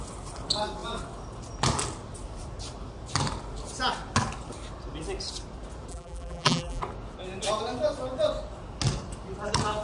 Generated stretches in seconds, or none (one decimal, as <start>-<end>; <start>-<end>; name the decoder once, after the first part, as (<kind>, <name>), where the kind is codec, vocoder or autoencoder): 5.9-6.8 (vocoder, BigVGAN v2)